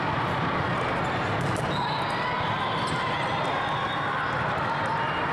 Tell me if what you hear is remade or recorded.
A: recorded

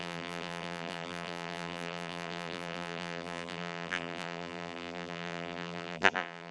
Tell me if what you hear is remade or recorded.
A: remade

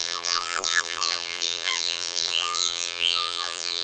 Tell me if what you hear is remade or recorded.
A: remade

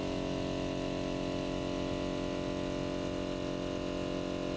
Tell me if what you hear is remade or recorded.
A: recorded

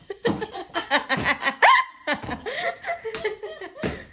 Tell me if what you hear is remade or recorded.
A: remade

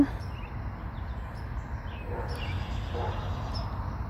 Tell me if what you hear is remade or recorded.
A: recorded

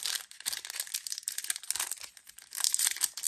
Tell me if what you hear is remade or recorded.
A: recorded